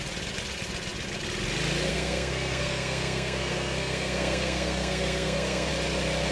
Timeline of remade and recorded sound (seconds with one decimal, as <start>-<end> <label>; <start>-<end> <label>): 0.0-1.9 recorded; 1.9-5.7 remade; 5.7-6.3 recorded